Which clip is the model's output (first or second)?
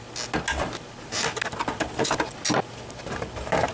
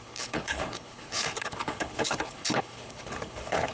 second